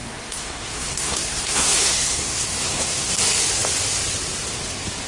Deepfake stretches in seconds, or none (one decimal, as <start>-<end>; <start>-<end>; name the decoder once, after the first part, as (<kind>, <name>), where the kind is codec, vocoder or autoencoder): 0.0-3.1 (codec, SNAC)